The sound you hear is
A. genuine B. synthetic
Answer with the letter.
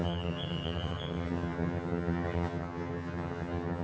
B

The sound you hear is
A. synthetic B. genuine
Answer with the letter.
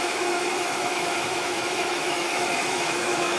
A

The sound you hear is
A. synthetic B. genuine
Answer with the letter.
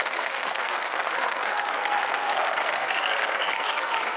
A